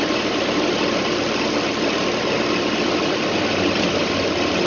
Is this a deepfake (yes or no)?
no